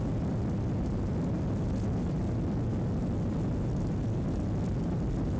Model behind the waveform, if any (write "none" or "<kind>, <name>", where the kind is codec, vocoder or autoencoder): none